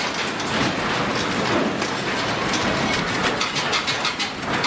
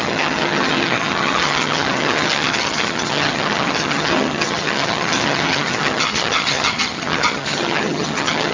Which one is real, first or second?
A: first